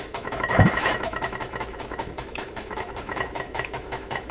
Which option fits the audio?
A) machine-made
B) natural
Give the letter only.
A